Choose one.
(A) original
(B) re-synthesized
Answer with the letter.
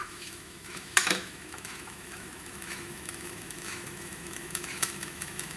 B